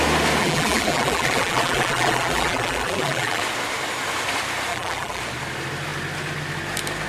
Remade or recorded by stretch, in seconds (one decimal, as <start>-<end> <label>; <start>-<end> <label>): 0.0-0.4 recorded; 0.4-3.4 remade; 3.4-4.7 recorded; 4.7-5.2 remade; 5.2-7.1 recorded